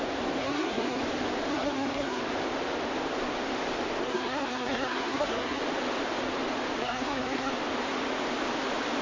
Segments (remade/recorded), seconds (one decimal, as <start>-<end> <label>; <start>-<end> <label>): 0.0-0.4 recorded; 0.4-1.0 remade; 1.0-1.5 recorded; 1.5-2.2 remade; 2.2-4.0 recorded; 4.0-5.6 remade; 5.6-6.8 recorded; 6.8-7.5 remade; 7.5-9.0 recorded